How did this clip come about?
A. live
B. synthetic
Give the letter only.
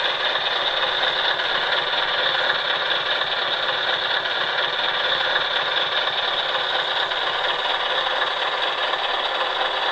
A